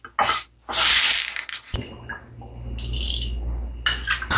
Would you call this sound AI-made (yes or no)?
no